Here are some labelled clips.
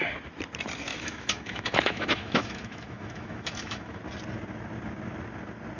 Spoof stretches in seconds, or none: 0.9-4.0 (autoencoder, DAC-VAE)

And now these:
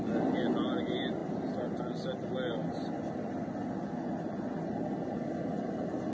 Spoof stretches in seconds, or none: none

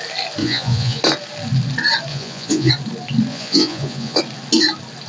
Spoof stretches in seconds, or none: 0.4-1.0 (vocoder, Vocos); 2.1-2.7; 3.3-4.2

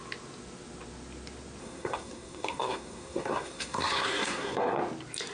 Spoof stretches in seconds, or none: 1.6-4.8 (codec, SNAC)